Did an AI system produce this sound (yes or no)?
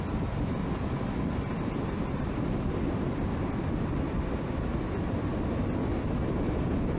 no